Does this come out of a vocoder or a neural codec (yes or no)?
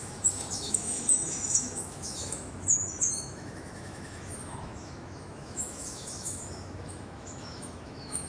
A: yes